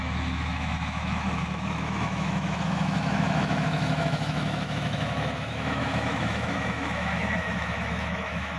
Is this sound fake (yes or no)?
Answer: yes